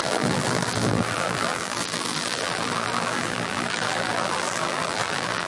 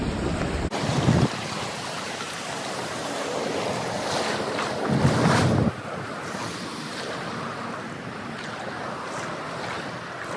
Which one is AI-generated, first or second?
first